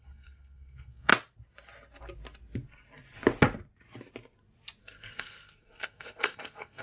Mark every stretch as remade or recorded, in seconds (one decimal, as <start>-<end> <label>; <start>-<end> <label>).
0.0-1.1 remade; 1.1-4.8 recorded; 4.8-6.8 remade